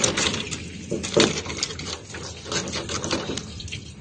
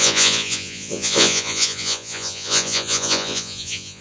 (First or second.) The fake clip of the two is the second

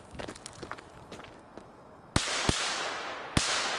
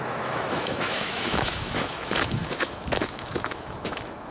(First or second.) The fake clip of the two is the second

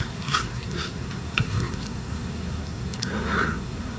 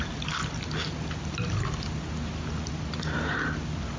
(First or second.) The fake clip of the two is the first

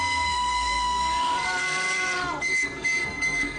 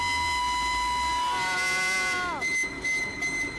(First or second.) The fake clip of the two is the first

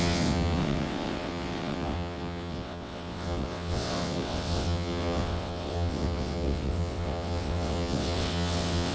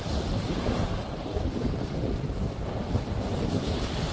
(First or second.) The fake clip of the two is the first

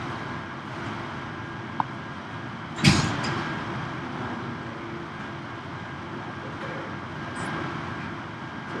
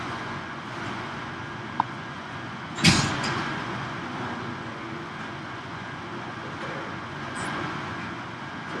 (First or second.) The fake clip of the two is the second